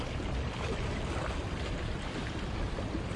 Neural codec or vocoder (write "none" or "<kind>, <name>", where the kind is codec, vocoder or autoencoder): none